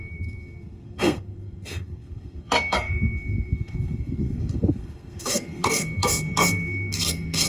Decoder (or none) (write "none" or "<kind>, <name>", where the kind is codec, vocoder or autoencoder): codec, SNAC